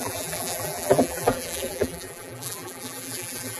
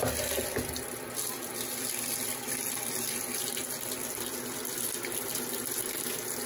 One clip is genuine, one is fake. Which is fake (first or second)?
first